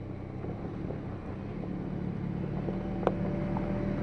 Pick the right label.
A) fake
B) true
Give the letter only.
B